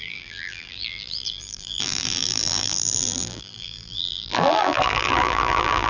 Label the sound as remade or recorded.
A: remade